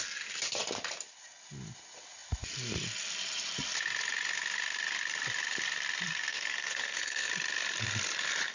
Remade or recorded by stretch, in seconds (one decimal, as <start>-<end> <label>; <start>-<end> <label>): 0.0-6.3 recorded; 6.3-7.3 remade; 7.3-8.5 recorded